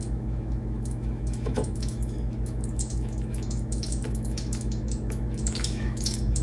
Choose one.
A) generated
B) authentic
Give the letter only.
A